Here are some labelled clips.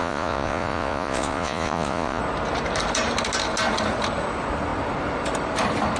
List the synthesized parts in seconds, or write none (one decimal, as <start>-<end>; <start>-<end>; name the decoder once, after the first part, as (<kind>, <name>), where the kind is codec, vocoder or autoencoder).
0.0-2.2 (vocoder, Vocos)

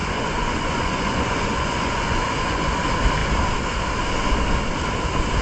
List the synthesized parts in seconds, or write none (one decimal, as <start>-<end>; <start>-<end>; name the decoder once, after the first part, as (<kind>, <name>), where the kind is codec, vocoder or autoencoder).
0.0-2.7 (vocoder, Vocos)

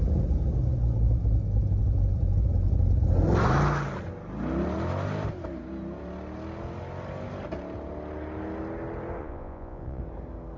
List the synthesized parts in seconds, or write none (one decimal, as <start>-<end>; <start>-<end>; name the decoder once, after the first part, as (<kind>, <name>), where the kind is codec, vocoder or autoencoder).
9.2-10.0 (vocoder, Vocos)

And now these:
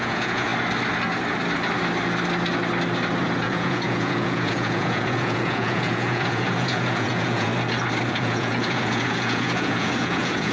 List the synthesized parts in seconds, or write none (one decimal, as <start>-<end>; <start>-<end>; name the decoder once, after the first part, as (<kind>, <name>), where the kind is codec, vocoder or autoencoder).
0.0-0.5 (vocoder, Vocos); 3.2-7.5; 8.1-10.5

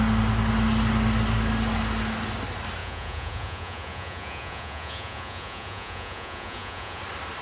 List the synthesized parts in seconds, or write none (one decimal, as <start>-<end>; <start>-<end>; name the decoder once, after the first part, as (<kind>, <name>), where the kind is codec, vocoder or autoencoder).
2.8-7.0 (vocoder, Vocos)